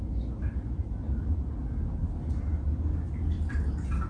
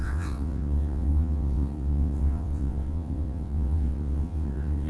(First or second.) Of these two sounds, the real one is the first